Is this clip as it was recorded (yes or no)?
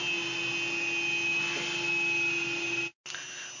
yes